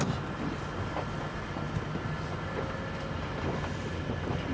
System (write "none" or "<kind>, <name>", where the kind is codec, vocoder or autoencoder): none